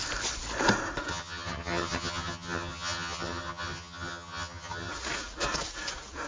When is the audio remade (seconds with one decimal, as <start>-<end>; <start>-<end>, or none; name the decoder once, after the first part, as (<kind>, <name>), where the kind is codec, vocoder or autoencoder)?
1.1-4.9 (vocoder, HiFi-GAN)